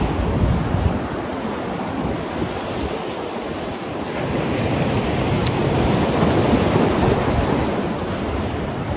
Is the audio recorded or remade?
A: recorded